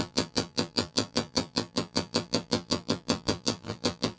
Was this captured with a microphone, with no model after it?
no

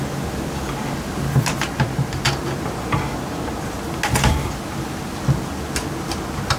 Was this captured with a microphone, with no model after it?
yes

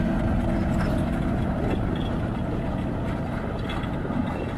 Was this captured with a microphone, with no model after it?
yes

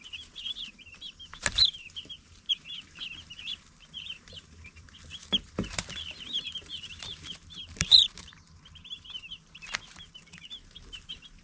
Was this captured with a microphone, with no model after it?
no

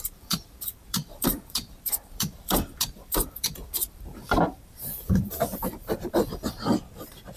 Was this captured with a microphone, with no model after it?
no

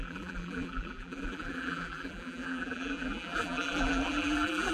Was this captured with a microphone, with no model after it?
no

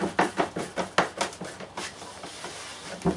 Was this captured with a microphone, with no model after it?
yes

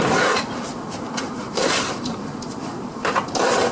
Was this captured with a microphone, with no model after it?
no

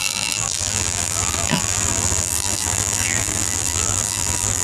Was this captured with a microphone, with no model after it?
no